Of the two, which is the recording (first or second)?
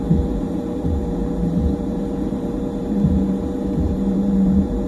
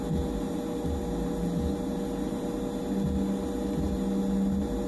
second